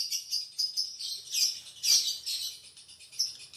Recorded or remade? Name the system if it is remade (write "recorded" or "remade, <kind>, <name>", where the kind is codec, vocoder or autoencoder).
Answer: recorded